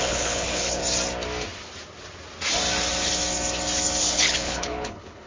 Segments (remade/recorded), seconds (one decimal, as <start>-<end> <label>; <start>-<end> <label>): 0.0-0.8 remade; 0.8-4.0 recorded; 4.0-5.3 remade